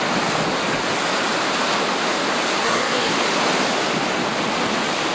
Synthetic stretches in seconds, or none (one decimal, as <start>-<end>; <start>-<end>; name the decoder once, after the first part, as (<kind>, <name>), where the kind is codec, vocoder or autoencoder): 2.6-3.1 (codec, SNAC)